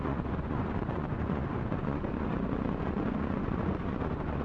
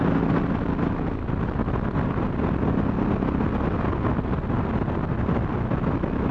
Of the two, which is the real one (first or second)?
second